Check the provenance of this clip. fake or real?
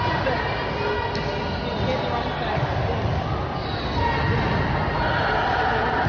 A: real